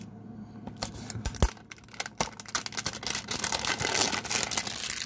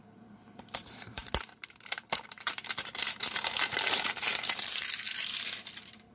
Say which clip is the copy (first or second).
second